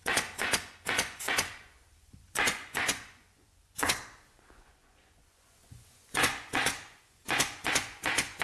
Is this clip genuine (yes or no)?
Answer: no